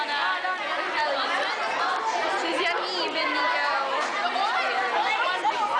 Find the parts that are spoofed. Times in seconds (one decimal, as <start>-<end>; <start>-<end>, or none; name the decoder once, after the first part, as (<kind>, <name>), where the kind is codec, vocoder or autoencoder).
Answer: none